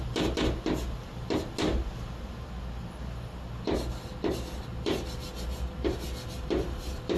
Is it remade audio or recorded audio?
recorded